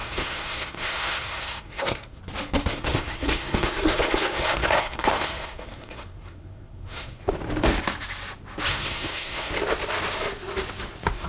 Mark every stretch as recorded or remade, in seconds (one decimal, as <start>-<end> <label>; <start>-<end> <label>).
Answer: 0.0-2.2 remade; 2.2-2.7 recorded; 2.7-7.2 remade; 7.2-8.7 recorded; 8.7-9.5 remade; 9.5-11.3 recorded